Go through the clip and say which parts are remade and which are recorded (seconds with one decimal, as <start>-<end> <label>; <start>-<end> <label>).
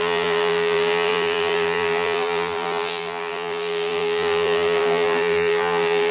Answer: 0.0-6.1 remade